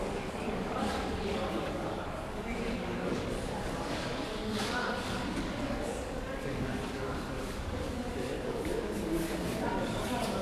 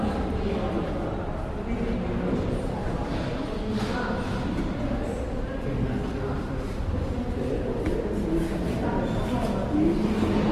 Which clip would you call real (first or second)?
second